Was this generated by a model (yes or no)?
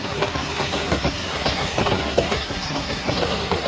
yes